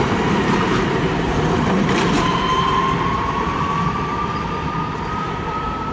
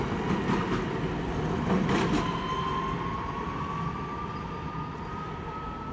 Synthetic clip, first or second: first